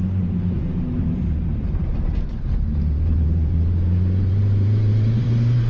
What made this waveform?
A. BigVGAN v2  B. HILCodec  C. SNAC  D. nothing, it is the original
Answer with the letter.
A